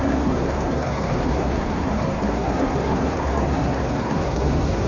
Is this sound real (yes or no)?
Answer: no